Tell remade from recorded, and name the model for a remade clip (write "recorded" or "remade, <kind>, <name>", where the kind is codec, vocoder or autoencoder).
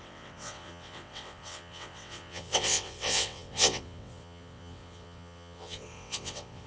remade, vocoder, WaveNeXt